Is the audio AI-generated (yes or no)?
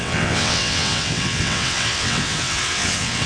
yes